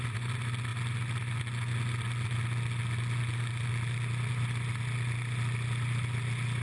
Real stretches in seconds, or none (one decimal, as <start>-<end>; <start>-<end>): 0.0-6.6